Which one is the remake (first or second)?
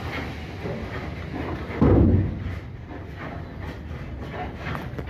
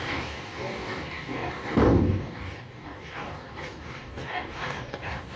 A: second